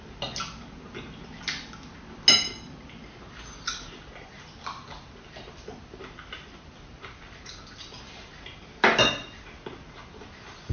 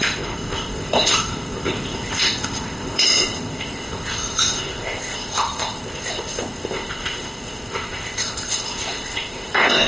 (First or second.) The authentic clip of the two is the first